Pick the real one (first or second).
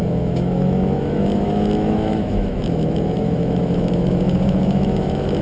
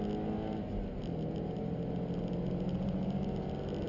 second